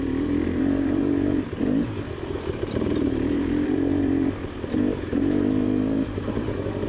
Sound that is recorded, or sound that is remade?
remade